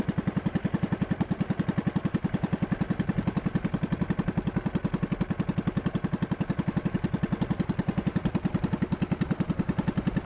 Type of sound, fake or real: real